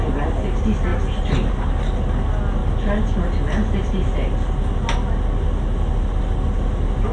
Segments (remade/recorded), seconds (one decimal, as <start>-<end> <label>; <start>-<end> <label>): 0.0-7.1 recorded